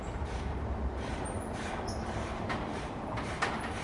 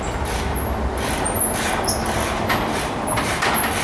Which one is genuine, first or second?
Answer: second